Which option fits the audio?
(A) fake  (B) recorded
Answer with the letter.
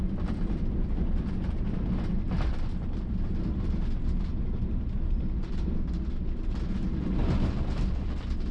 B